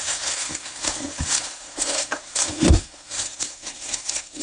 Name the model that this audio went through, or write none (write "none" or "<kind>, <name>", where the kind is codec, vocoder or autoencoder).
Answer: codec, SNAC